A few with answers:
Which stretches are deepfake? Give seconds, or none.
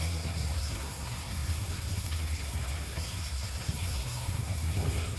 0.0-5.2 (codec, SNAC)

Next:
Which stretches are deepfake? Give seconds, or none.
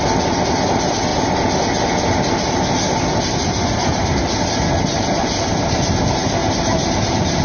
none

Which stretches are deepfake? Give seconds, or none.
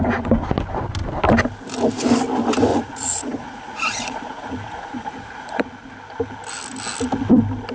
2.7-5.6 (vocoder, Vocos)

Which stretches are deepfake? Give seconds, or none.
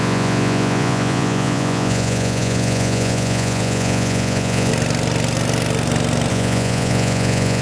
0.0-4.7 (vocoder, Vocos); 6.3-7.6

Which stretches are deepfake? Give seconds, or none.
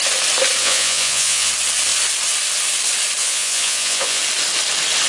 0.6-1.5 (vocoder, Vocos); 3.2-4.2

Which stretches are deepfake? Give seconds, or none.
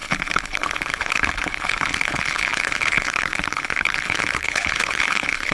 0.0-5.5 (codec, HILCodec)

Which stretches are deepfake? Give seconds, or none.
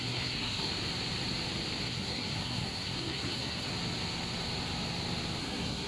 0.0-0.7 (codec, SNAC); 1.8-3.7; 5.4-5.9